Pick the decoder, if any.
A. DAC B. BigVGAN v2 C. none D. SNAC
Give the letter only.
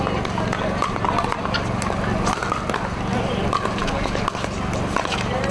C